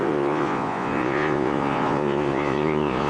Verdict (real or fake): fake